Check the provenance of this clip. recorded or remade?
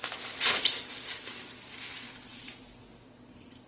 recorded